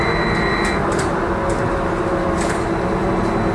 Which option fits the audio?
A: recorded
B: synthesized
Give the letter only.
A